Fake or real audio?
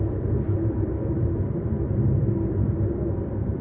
fake